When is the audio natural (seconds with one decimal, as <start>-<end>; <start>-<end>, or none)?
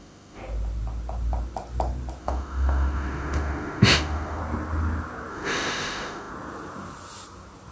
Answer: 0.4-2.2; 4.4-5.3; 6.3-7.7